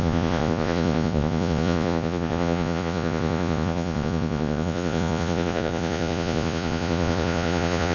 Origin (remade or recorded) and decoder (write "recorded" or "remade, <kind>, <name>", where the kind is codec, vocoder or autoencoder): remade, vocoder, Vocos